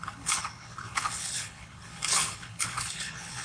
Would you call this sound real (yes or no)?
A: no